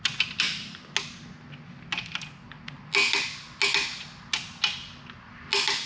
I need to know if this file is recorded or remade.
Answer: recorded